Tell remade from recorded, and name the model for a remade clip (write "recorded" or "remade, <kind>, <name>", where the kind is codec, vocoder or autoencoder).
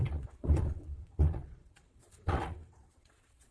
remade, vocoder, WaveNeXt